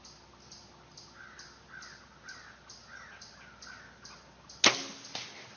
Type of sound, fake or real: real